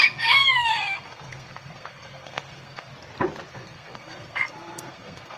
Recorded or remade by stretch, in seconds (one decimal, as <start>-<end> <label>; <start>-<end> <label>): 0.0-2.9 remade; 2.9-3.5 recorded; 3.5-5.4 remade